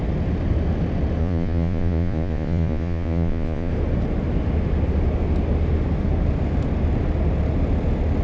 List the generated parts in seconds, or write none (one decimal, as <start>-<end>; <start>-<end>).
1.2-3.7